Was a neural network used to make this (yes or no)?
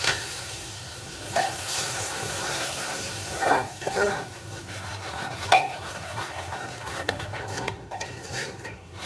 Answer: yes